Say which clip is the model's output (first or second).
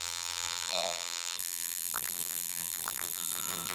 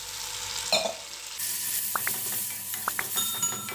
first